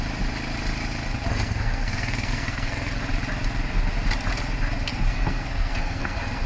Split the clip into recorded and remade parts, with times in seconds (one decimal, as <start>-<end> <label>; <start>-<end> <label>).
0.0-1.3 recorded; 1.3-3.0 remade; 3.0-4.9 recorded; 4.9-6.5 remade